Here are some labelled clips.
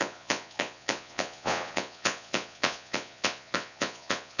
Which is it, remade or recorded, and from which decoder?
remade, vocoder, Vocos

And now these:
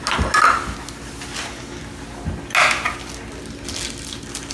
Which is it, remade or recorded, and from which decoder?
recorded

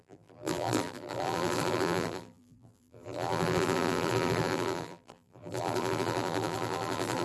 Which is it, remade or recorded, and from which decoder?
remade, vocoder, BigVGAN v2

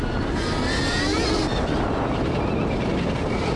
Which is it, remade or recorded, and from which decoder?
recorded